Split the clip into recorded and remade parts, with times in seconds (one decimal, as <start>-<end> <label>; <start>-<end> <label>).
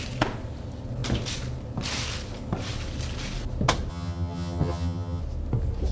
0.0-3.9 recorded; 3.9-5.2 remade; 5.2-5.9 recorded